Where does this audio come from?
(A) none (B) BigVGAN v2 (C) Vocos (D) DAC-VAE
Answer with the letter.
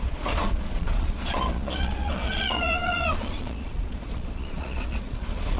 C